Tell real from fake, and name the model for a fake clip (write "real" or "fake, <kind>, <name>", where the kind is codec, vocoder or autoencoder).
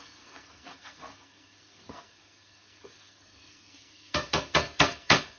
fake, codec, SNAC